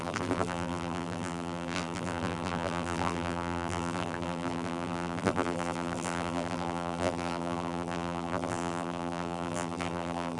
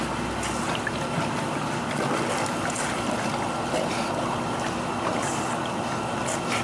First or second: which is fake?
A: first